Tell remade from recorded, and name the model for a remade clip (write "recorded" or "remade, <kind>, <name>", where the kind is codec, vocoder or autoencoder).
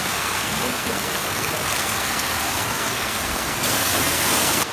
remade, codec, SNAC